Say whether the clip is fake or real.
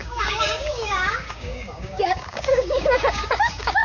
fake